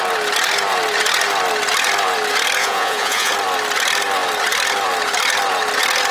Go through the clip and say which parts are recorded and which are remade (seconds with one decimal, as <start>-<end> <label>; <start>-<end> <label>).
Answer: 0.0-2.6 recorded; 2.6-3.3 remade; 3.3-6.1 recorded